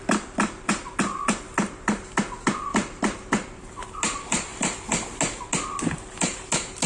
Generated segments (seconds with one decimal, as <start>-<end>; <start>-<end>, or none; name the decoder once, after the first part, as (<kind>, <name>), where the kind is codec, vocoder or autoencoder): none